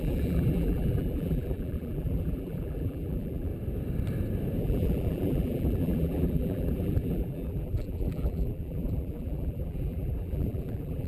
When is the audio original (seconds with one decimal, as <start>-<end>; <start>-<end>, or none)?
3.5-4.6